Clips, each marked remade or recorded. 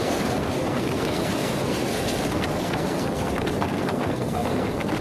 remade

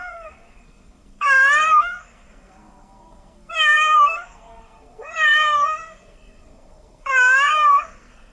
remade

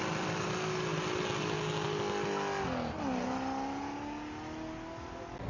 recorded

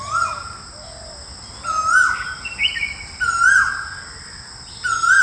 recorded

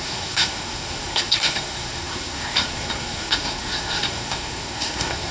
remade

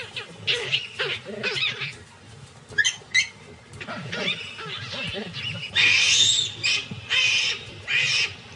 recorded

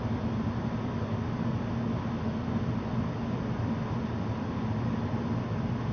recorded